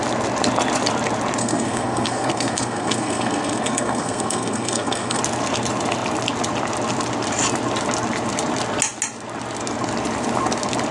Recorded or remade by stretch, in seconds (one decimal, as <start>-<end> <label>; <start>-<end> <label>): 0.0-1.4 recorded; 1.4-5.2 remade; 5.2-10.9 recorded